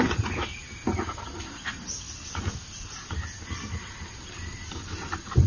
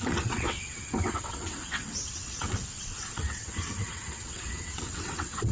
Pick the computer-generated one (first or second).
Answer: second